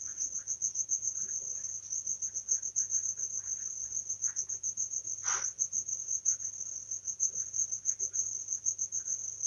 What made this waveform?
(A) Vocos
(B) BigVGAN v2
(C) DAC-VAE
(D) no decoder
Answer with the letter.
D